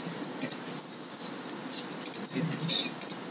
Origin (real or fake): real